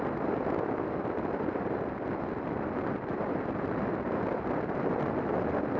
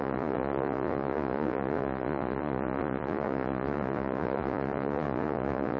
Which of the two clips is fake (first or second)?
second